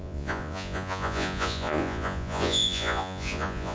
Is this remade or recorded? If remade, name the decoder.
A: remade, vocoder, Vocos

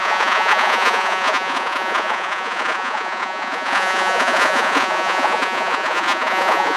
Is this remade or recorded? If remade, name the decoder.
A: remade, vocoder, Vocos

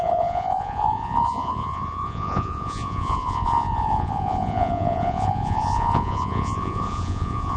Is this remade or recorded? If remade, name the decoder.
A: remade, vocoder, Vocos